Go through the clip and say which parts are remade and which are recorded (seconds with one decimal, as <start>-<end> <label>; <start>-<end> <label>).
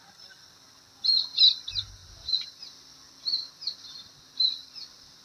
0.0-2.0 recorded; 2.0-2.6 remade; 2.6-3.3 recorded; 3.3-5.2 remade